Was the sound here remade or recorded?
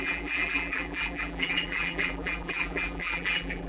remade